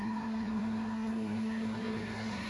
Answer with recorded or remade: remade